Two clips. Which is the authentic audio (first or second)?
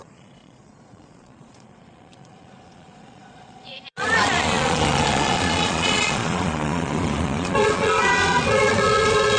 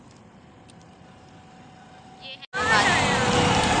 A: second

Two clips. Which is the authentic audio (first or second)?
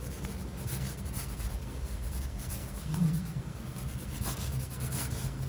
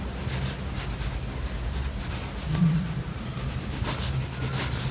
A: second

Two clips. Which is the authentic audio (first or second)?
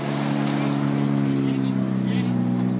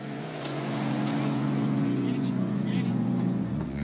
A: first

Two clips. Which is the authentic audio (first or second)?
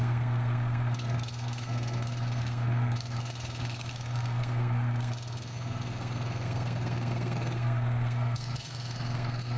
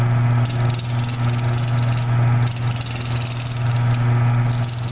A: second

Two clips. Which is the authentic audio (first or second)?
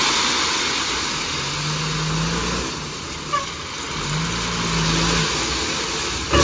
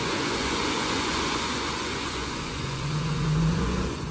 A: first